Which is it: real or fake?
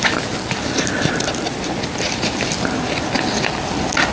real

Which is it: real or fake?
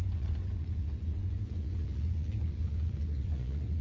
fake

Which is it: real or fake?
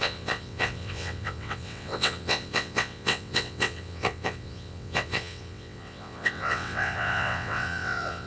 fake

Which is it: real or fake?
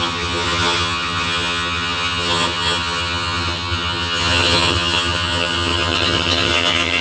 fake